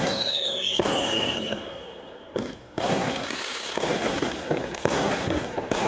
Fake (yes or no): yes